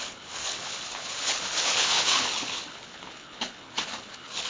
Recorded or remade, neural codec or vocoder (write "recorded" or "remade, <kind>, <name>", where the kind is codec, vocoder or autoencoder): remade, codec, HILCodec